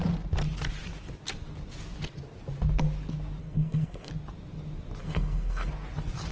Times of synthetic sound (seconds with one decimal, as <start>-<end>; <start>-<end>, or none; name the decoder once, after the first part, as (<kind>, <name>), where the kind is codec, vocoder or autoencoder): 3.4-4.1 (codec, SNAC); 5.0-5.7